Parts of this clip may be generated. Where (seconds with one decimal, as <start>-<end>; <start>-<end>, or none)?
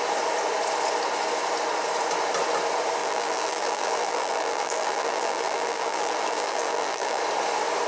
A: 3.0-7.2